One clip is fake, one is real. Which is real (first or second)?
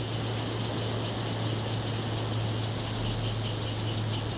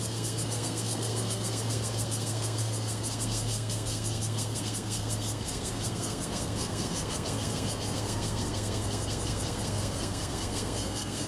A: first